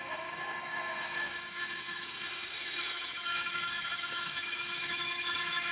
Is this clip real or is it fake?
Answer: fake